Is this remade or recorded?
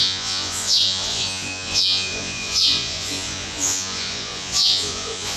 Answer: remade